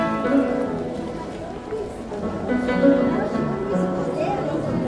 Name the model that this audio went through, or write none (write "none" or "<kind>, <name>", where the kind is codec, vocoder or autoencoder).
vocoder, BigVGAN v2